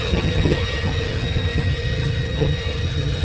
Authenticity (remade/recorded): remade